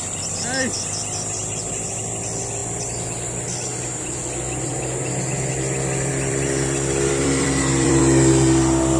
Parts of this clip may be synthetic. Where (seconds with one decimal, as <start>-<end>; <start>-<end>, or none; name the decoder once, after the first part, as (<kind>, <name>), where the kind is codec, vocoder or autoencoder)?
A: 6.1-8.0 (vocoder, BigVGAN v2)